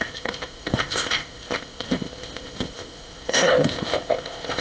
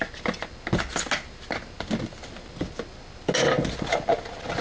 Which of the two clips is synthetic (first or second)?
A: first